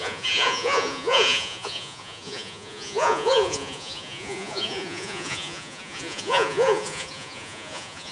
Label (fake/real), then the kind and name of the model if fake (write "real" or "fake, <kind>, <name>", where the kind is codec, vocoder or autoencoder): fake, vocoder, Vocos